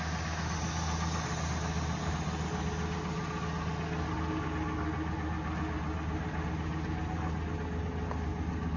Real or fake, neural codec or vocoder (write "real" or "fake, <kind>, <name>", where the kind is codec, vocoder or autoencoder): real